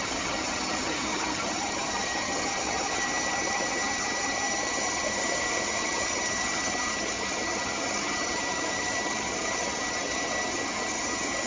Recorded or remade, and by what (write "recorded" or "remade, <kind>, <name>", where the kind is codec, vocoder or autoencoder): remade, vocoder, HiFi-GAN